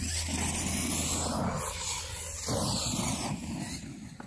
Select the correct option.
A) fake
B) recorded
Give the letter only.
B